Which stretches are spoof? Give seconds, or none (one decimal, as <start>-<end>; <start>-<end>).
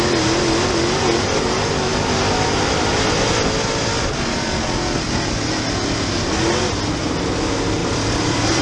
7.8-8.6